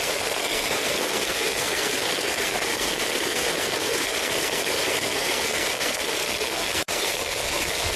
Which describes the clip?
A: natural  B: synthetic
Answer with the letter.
B